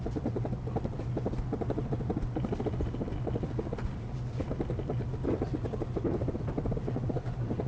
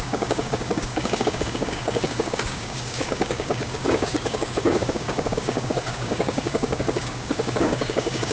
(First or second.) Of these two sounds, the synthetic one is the second